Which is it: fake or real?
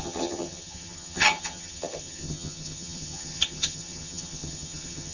fake